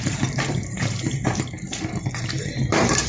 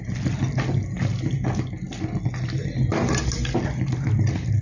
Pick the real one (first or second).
second